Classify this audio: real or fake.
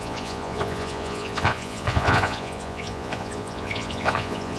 fake